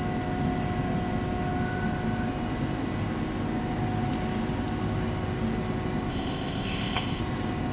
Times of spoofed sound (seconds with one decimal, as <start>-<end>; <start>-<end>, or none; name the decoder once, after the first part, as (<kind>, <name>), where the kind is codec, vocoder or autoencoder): 6.1-7.2 (codec, ZipCodec)